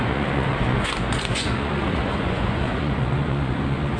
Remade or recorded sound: remade